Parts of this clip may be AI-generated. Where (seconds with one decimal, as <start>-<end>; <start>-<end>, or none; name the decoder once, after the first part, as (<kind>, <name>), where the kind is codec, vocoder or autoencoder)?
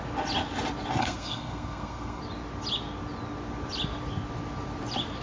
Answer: 1.0-2.2 (codec, SNAC)